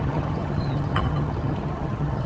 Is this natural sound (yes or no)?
no